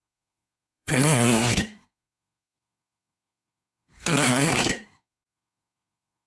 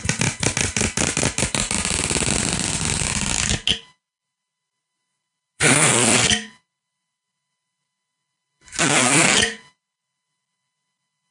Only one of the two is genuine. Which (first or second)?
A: second